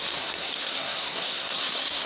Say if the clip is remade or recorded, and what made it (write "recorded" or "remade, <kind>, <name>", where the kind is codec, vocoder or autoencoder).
remade, codec, SNAC